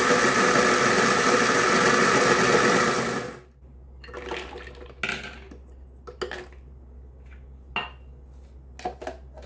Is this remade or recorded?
recorded